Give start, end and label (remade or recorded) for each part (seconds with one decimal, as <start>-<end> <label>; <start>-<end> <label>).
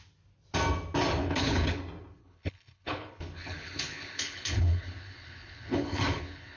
0.0-1.2 recorded; 1.2-1.8 remade; 1.8-2.2 recorded; 2.2-6.6 remade